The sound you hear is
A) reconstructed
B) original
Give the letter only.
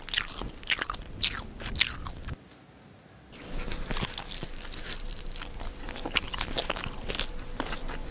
B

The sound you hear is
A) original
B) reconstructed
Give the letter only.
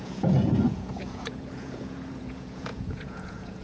B